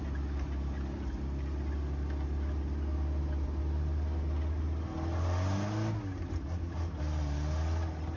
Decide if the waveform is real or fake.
real